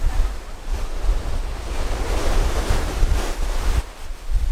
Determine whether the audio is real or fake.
fake